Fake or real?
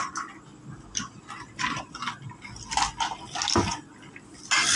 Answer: real